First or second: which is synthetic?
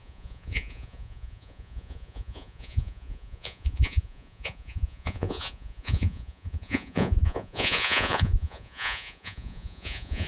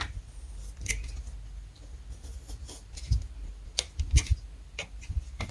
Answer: first